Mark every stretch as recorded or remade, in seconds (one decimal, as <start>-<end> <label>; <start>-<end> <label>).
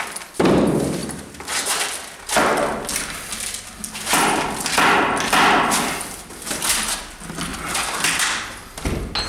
0.0-9.3 recorded